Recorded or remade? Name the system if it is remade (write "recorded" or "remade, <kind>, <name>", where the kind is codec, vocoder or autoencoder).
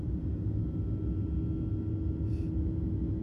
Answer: recorded